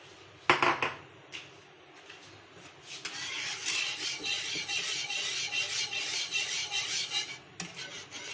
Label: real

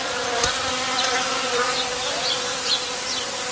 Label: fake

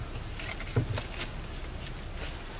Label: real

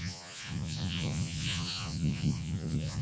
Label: fake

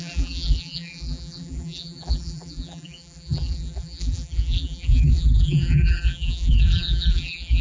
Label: fake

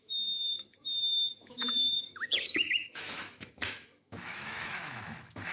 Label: fake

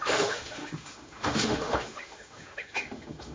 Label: fake